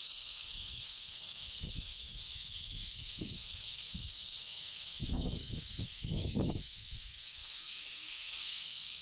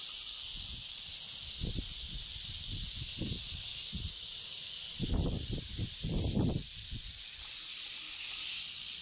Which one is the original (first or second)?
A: second